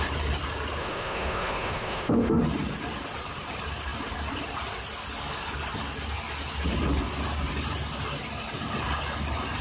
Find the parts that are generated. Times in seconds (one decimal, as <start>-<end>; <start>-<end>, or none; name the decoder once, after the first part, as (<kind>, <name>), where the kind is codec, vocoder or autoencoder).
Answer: 0.8-2.4 (autoencoder, DAC-VAE)